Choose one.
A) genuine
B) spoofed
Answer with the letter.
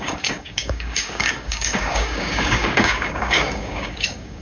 B